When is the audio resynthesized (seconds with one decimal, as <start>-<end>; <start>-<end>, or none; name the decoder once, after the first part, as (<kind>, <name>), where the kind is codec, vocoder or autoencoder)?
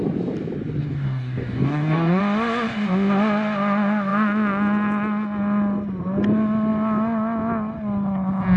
0.8-2.2 (codec, DAC)